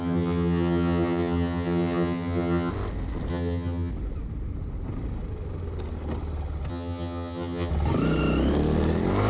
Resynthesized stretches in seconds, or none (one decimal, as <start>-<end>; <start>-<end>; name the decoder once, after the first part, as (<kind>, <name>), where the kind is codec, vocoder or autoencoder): 0.0-2.7 (vocoder, HiFi-GAN); 3.3-3.9; 6.7-7.7